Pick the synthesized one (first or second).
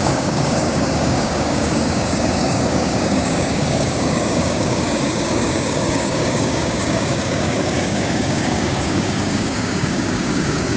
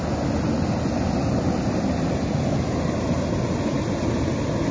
first